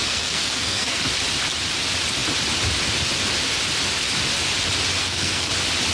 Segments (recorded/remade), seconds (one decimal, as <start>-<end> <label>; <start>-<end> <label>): 0.0-1.0 remade; 1.0-5.0 recorded; 5.0-5.5 remade; 5.5-5.9 recorded